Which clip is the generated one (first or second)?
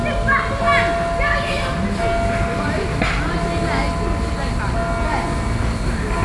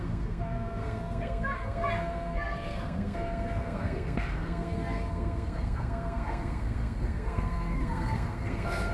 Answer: second